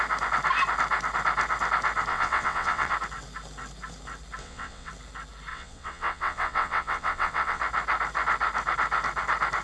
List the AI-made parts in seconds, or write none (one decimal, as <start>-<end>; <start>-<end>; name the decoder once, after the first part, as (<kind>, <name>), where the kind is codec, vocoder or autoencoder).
2.1-2.9 (vocoder, WaveNeXt); 4.4-4.9; 5.5-7.6